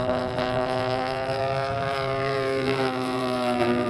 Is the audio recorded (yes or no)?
no